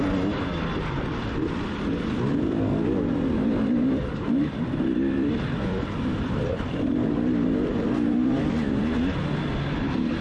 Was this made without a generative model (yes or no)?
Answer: no